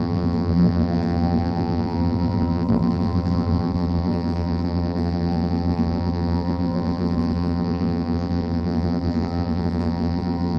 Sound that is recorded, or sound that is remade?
remade